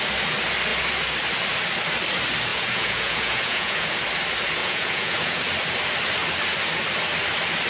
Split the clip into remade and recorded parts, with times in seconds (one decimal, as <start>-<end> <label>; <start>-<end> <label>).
0.0-2.5 recorded; 2.5-3.9 remade; 3.9-4.6 recorded; 4.6-5.4 remade; 5.4-7.7 recorded